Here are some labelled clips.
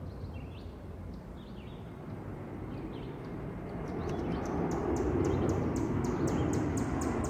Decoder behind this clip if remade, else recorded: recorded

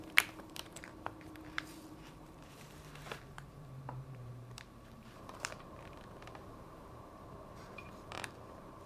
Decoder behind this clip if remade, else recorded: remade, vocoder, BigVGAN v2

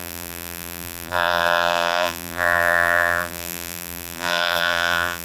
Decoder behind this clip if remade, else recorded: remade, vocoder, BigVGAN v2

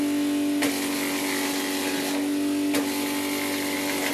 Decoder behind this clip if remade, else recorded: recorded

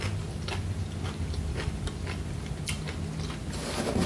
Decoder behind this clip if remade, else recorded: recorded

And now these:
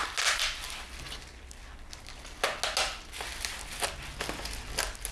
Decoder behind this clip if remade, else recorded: recorded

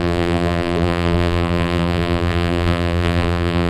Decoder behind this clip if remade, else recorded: remade, vocoder, BigVGAN v2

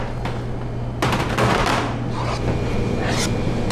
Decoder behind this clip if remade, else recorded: recorded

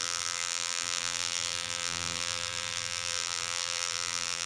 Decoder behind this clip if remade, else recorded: remade, vocoder, BigVGAN v2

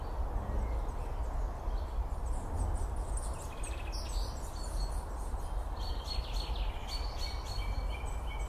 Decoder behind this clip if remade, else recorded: recorded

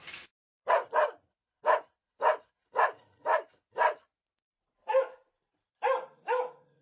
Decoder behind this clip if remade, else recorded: remade, vocoder, BigVGAN v2